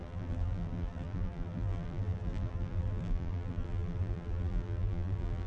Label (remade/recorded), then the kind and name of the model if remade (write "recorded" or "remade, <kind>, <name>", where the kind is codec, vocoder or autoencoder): remade, vocoder, BigVGAN v2